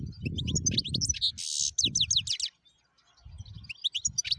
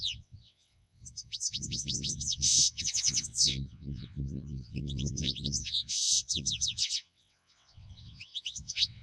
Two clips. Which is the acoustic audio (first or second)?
first